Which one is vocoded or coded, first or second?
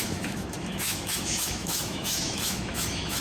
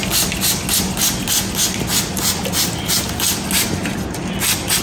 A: first